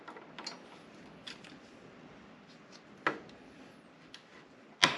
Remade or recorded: recorded